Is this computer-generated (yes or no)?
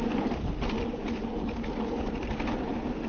no